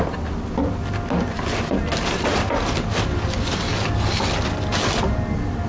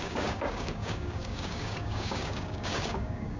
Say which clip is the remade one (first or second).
second